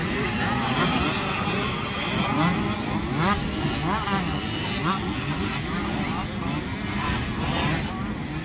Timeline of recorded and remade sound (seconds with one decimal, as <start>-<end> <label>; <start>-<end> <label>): 0.0-8.4 recorded